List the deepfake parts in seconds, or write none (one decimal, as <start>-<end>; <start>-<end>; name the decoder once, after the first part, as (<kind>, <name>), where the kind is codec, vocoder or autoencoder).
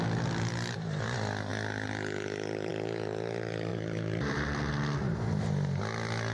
3.7-4.7 (vocoder, BigVGAN v2)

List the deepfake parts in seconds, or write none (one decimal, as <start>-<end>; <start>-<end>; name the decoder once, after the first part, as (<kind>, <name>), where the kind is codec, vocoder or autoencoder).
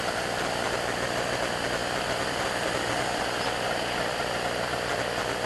none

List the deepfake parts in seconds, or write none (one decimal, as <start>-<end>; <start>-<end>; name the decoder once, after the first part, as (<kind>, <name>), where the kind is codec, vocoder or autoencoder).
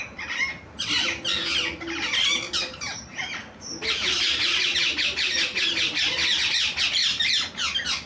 7.0-7.5 (vocoder, BigVGAN v2)